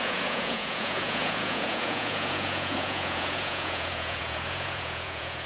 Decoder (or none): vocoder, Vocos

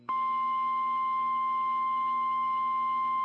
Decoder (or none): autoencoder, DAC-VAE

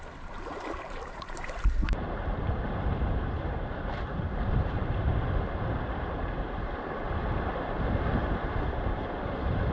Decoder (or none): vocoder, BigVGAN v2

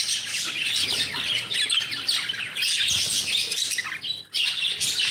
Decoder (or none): none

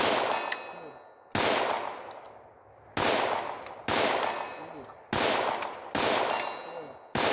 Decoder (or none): none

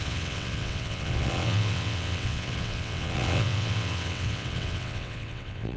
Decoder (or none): vocoder, WaveNeXt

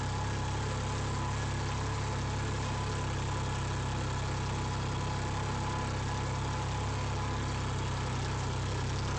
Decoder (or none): none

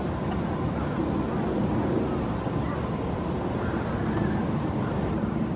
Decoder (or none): none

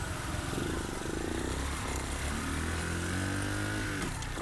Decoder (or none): none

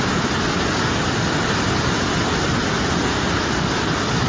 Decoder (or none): none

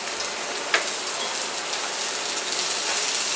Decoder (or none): none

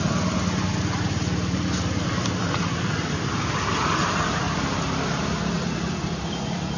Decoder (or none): none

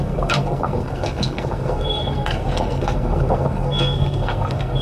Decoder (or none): codec, SNAC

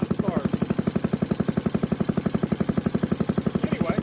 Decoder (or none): none